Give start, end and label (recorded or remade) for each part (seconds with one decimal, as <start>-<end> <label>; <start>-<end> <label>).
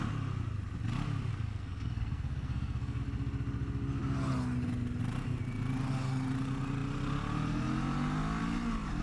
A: 0.0-1.3 recorded; 1.3-3.0 remade; 3.0-9.0 recorded